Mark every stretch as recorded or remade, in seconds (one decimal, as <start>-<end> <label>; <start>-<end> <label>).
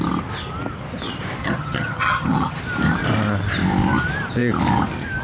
0.0-1.4 recorded; 1.4-2.6 remade; 2.6-5.2 recorded